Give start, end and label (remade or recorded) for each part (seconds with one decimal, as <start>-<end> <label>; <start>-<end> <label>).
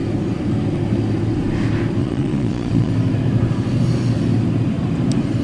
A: 0.0-2.0 recorded; 2.0-2.9 remade; 2.9-5.4 recorded